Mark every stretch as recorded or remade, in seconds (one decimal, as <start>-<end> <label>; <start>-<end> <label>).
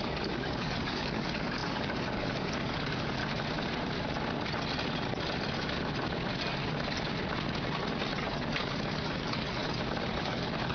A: 0.0-3.2 remade; 3.2-8.3 recorded; 8.3-9.6 remade; 9.6-10.2 recorded; 10.2-10.7 remade